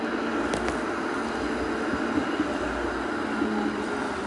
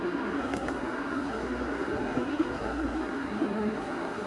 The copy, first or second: second